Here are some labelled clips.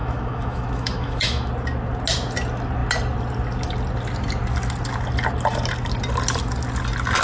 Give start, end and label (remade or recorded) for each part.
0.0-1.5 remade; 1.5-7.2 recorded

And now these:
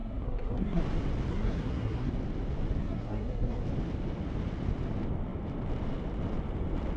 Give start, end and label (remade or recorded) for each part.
0.0-0.8 remade; 0.8-1.3 recorded; 1.3-2.1 remade; 2.1-2.8 recorded; 2.8-3.6 remade; 3.6-7.0 recorded

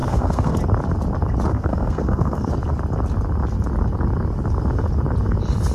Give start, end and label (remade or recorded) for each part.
0.0-0.6 remade; 0.6-1.5 recorded; 1.5-2.5 remade; 2.5-5.7 recorded

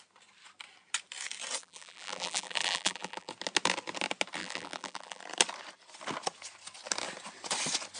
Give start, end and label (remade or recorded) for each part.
0.0-1.6 recorded; 1.6-3.3 remade; 3.3-4.4 recorded; 4.4-5.2 remade; 5.2-8.0 recorded

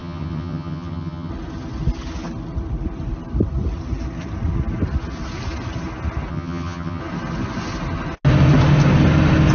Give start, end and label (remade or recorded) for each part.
0.0-1.3 remade; 1.3-6.3 recorded; 6.3-7.0 remade; 7.0-9.5 recorded

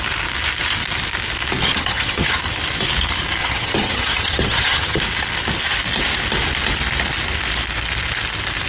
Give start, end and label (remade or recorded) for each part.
0.0-1.6 recorded; 1.6-2.4 remade; 2.4-3.4 recorded; 3.4-5.0 remade; 5.0-8.7 recorded